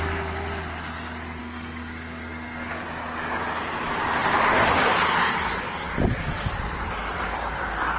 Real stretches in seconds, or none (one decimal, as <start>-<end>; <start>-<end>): 0.0-1.4; 2.8-8.0